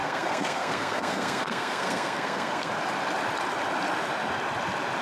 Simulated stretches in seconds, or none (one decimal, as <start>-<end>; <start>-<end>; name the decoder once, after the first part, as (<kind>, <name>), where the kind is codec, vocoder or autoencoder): 0.0-2.7 (codec, SNAC)